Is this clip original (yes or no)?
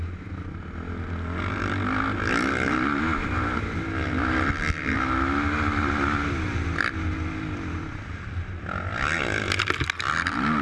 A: yes